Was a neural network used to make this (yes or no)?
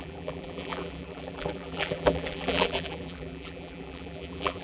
yes